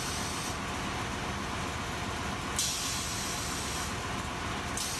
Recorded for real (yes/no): yes